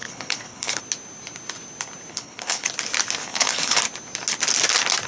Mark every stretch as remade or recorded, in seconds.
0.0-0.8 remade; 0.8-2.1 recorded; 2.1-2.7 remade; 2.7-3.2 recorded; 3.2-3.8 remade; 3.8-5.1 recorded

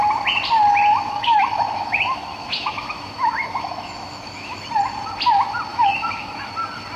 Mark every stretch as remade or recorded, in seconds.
0.0-0.9 recorded; 0.9-4.6 remade; 4.6-5.7 recorded; 5.7-6.5 remade; 6.5-7.0 recorded

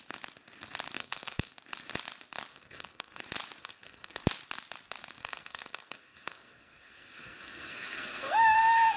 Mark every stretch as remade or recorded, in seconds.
0.0-1.0 recorded; 1.0-1.5 remade; 1.5-2.5 recorded; 2.5-3.2 remade; 3.2-3.6 recorded; 3.6-4.2 remade; 4.2-5.2 recorded; 5.2-9.0 remade